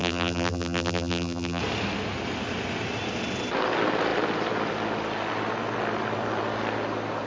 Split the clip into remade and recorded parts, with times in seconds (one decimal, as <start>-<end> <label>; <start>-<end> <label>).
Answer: 0.0-1.6 remade; 1.6-7.3 recorded